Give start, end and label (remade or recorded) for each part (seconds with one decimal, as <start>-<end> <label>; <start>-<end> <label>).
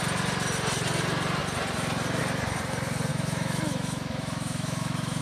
0.0-3.1 recorded; 3.1-5.2 remade